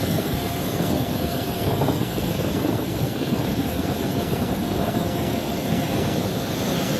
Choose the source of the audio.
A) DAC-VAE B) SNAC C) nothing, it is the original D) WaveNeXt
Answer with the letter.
B